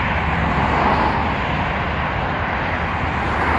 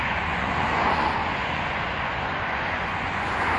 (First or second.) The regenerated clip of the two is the second